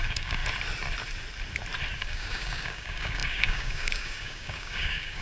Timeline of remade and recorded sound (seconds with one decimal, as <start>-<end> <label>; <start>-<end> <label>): 0.0-0.4 remade; 0.4-2.0 recorded; 2.0-5.2 remade